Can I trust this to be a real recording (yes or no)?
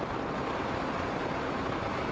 yes